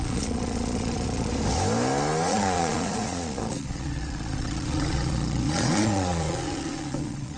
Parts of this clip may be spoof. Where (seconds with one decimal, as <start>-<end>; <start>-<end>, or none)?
0.0-1.3; 2.3-7.4